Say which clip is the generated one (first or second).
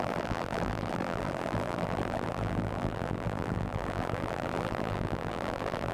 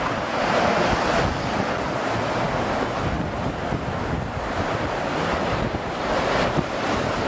first